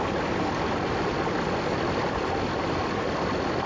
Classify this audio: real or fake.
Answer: real